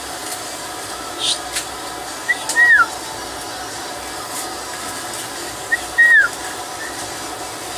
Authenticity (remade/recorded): recorded